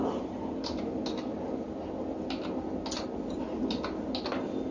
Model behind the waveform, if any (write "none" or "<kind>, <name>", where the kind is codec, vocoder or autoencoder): none